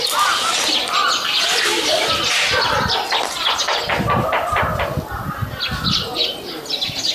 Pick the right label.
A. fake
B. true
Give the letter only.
B